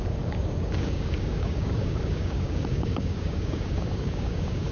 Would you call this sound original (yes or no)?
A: no